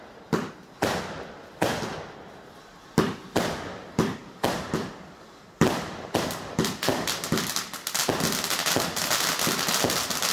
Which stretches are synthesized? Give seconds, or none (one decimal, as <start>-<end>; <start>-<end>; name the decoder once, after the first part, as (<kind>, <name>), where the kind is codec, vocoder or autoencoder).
none